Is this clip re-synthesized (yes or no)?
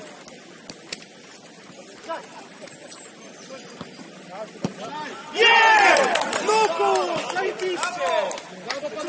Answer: no